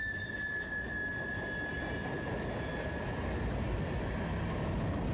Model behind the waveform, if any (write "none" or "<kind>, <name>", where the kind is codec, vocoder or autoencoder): none